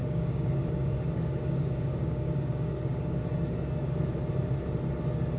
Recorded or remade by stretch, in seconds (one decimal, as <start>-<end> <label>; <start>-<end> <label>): 0.0-3.2 remade; 3.2-5.4 recorded

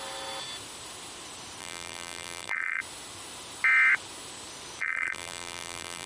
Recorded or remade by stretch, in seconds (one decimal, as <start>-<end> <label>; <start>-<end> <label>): 0.0-1.6 recorded; 1.6-2.8 remade; 2.8-4.8 recorded; 4.8-6.1 remade